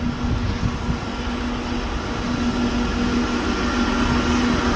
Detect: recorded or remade recorded